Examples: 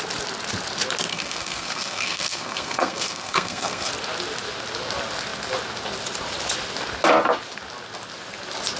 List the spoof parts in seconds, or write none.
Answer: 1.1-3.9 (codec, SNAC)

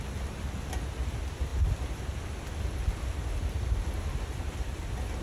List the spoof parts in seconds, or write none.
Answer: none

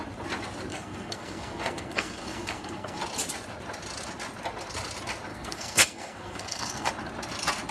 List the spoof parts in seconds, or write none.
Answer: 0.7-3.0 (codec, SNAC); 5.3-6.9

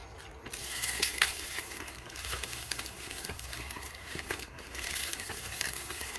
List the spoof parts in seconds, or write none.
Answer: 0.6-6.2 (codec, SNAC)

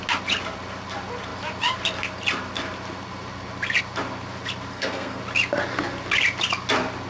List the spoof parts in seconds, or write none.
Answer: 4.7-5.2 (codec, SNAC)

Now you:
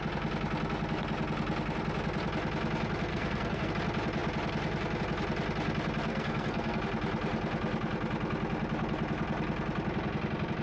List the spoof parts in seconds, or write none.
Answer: 3.1-3.7 (codec, SNAC); 6.1-6.8

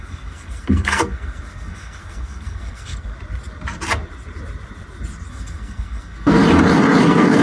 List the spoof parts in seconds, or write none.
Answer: 0.0-3.1 (codec, SNAC); 5.3-6.4; 7.0-7.4

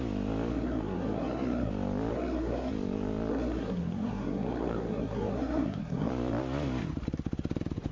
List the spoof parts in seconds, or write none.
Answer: 0.5-1.7 (codec, SNAC); 2.1-2.7; 3.3-6.1